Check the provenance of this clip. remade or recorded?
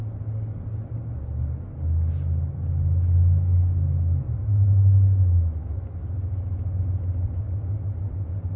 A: recorded